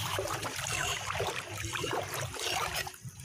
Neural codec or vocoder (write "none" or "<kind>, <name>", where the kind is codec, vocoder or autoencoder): vocoder, BigVGAN v2